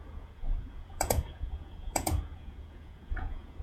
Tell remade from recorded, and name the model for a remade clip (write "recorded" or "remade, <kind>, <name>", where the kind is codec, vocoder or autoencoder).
remade, vocoder, Vocos